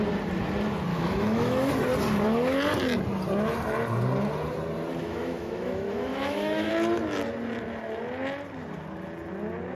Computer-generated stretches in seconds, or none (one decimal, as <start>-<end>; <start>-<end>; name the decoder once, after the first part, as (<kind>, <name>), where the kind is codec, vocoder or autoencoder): 0.9-1.7 (autoencoder, DAC-VAE); 5.0-6.7